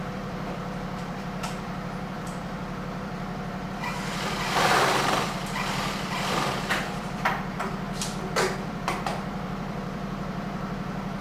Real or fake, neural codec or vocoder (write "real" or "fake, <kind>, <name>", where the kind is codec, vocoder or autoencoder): fake, vocoder, BigVGAN v2